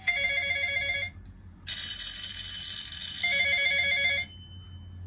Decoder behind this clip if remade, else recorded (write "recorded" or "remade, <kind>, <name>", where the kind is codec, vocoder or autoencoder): recorded